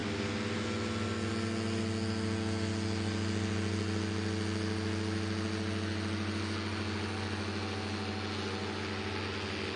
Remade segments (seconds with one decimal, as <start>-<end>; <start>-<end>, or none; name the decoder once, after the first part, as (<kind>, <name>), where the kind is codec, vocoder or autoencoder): none